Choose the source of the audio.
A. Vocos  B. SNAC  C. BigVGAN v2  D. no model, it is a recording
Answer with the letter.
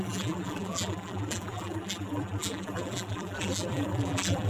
C